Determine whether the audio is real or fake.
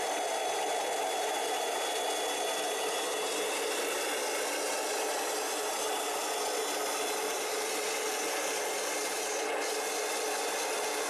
real